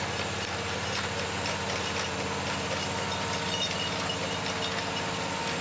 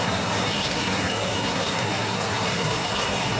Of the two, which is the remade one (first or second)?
second